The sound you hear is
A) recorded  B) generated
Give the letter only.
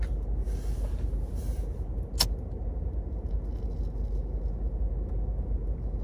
A